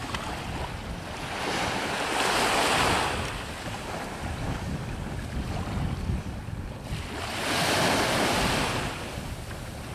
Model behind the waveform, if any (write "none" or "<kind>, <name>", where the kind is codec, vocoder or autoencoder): none